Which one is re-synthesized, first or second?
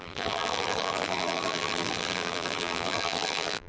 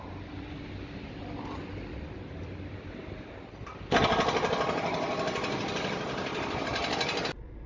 first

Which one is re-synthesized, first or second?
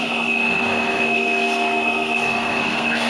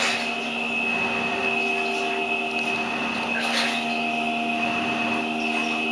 first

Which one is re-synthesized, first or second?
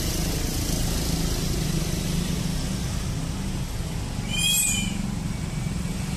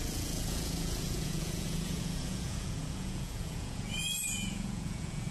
second